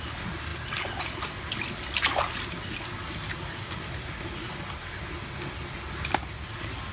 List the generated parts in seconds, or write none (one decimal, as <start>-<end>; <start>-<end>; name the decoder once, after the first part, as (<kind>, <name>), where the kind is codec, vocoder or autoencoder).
none